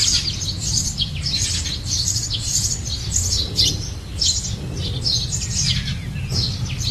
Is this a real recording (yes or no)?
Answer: yes